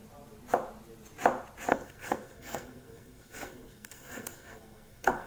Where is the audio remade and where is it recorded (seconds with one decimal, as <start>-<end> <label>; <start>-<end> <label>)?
0.0-1.7 recorded; 1.7-5.3 remade